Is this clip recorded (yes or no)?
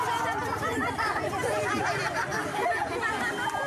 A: yes